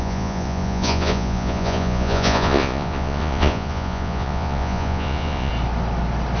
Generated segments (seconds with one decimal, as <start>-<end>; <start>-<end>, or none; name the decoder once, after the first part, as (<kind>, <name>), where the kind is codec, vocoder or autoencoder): 0.0-5.5 (vocoder, Vocos)